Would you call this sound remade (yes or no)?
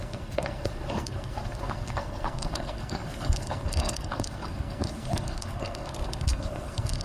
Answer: yes